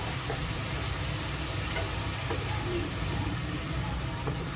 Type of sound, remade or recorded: remade